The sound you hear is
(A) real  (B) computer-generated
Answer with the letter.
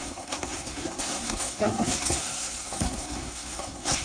B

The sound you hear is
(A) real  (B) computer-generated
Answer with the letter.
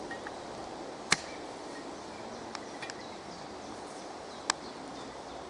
A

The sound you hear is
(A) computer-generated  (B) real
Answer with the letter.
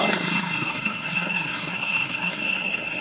A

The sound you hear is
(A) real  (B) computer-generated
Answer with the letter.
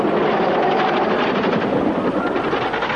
A